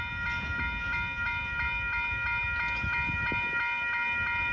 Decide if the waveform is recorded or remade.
recorded